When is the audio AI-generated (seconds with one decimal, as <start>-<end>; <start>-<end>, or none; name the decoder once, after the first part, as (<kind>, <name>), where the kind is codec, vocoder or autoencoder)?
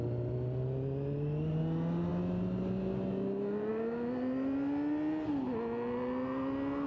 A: none